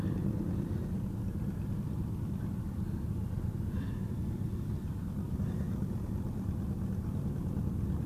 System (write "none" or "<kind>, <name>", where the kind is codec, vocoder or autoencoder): none